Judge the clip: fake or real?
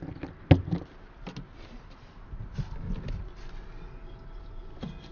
real